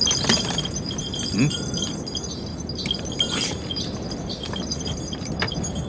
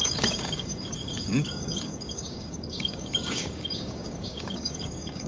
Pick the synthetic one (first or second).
second